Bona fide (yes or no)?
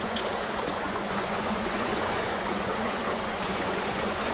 no